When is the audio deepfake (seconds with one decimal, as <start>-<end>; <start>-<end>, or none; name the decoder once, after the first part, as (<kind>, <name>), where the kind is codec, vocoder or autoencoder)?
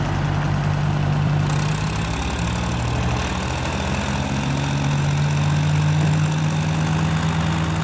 none